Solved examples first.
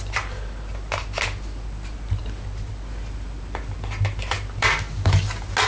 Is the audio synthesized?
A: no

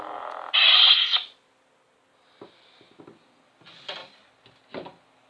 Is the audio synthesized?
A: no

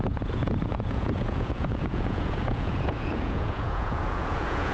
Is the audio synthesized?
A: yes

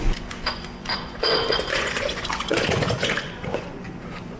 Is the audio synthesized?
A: yes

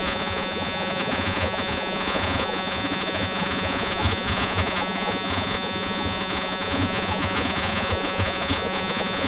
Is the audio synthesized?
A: yes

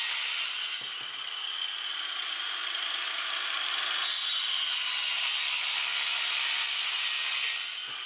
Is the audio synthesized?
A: no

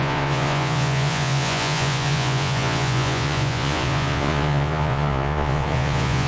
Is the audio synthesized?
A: yes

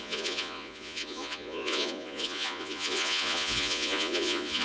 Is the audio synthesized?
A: yes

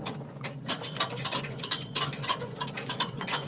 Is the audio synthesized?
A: yes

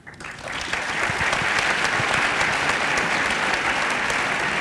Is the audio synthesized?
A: no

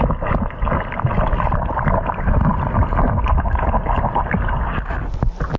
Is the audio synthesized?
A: no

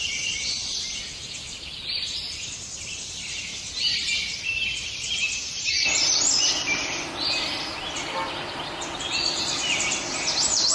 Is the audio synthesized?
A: no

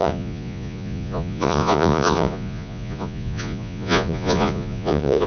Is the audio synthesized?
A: yes